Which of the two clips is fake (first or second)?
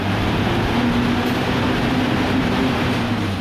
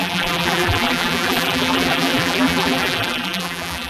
second